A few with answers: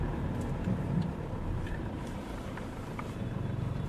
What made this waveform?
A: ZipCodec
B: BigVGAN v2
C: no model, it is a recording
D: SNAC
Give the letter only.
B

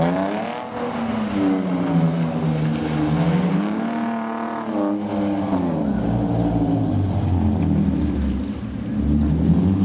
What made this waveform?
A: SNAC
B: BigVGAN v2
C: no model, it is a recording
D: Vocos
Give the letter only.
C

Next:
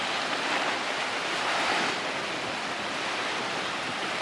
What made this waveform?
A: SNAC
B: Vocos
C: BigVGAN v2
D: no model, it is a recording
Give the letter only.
D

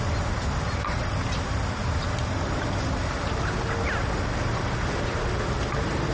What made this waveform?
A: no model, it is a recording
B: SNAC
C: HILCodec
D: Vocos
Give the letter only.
A